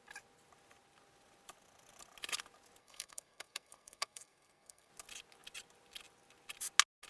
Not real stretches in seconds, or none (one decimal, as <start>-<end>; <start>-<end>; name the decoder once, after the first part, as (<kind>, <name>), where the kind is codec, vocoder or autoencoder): 2.8-4.9 (codec, SNAC)